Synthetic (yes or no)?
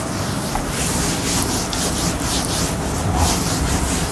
no